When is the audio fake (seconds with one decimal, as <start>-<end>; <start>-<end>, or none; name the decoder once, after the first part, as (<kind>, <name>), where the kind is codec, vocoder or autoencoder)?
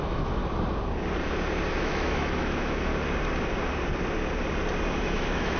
0.0-0.4 (autoencoder, DAC-VAE); 1.8-2.9; 5.0-5.6